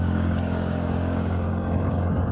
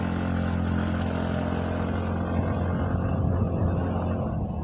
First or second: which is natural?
second